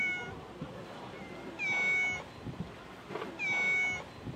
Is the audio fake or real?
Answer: real